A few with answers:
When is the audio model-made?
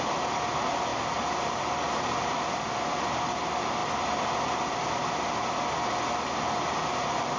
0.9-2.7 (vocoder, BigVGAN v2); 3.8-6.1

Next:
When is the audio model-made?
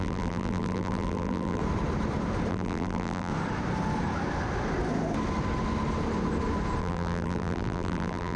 0.0-1.6 (vocoder, BigVGAN v2); 2.5-3.3; 6.8-8.4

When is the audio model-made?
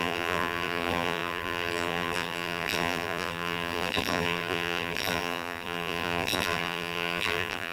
0.0-7.7 (vocoder, BigVGAN v2)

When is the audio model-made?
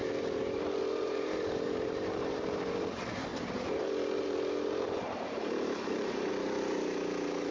0.0-2.6 (vocoder, BigVGAN v2); 3.3-6.3